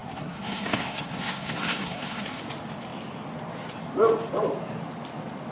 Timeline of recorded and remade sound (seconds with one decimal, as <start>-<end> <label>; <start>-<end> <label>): 0.0-2.4 remade; 2.4-5.5 recorded